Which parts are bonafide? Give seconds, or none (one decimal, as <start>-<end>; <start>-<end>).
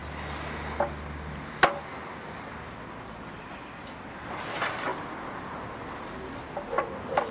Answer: 0.0-7.3